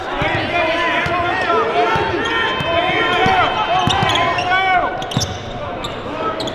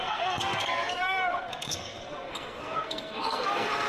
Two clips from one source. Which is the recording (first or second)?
first